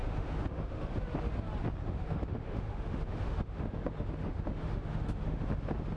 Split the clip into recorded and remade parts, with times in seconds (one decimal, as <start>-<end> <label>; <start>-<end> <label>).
0.0-0.9 remade; 0.9-1.8 recorded; 1.8-5.4 remade; 5.4-6.0 recorded